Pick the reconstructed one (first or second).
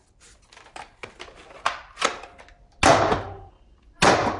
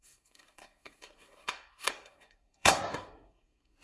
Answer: second